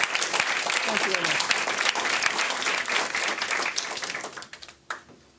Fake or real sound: real